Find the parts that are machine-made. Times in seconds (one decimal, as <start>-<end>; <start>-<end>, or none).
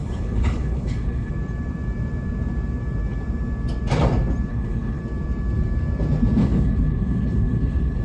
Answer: 0.0-1.3; 4.5-5.0; 6.4-8.0